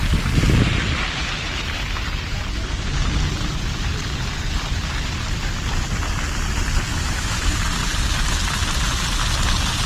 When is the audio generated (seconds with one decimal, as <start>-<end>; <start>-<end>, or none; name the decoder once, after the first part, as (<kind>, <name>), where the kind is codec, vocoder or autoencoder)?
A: 6.9-7.6 (autoencoder, DAC-VAE)